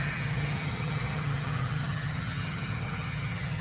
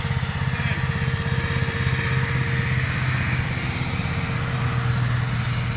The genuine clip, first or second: second